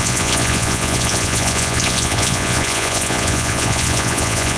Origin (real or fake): fake